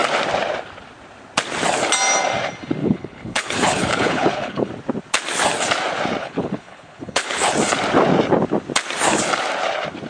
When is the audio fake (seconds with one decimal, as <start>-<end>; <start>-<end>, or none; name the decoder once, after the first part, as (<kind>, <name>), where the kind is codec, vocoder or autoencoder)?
2.8-4.7 (codec, HILCodec); 6.2-7.5